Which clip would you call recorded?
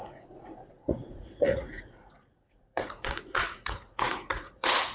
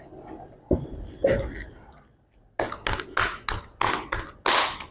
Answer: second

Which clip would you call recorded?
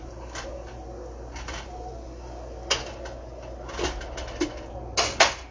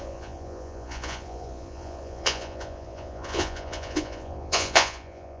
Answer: first